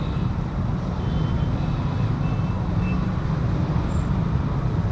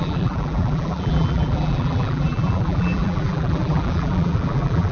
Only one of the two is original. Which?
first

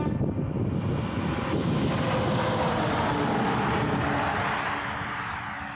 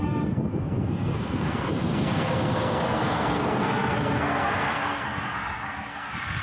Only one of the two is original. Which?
first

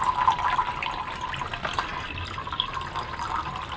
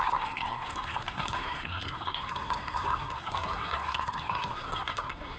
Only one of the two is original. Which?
first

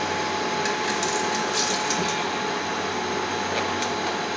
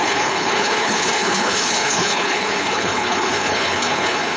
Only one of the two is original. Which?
first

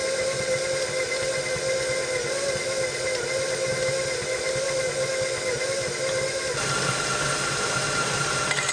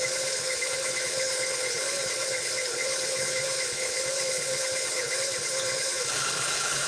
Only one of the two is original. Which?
first